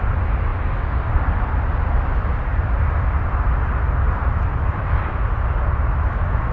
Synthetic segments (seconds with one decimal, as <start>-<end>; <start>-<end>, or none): none